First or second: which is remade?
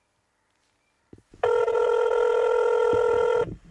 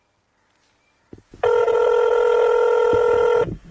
first